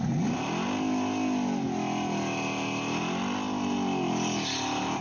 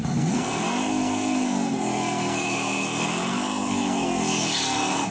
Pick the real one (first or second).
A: first